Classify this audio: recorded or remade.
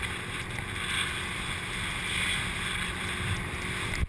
recorded